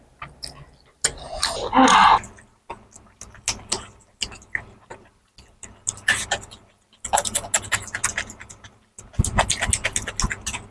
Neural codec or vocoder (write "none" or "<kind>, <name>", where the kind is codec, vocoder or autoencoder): none